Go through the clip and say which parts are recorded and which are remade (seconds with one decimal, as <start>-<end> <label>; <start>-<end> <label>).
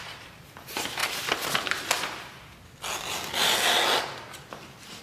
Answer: 0.0-1.0 remade; 1.0-4.0 recorded; 4.0-5.0 remade